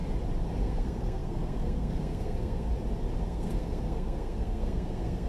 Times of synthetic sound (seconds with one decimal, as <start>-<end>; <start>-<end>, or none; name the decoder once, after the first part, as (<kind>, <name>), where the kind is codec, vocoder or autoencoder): 0.6-2.7 (codec, SNAC); 3.2-5.3